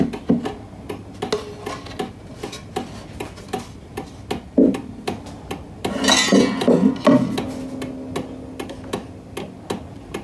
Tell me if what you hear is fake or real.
real